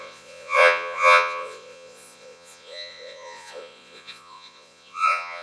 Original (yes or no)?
no